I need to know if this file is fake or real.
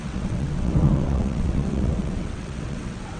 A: fake